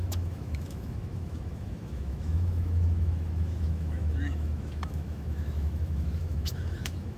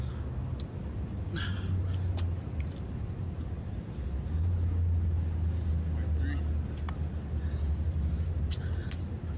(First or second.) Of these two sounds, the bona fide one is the second